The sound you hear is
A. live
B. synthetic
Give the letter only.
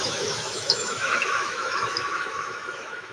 B